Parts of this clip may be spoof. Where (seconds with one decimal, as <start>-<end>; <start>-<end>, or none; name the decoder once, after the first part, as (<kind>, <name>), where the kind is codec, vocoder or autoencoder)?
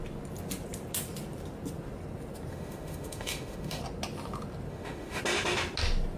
2.5-3.8 (autoencoder, DAC-VAE); 4.7-5.2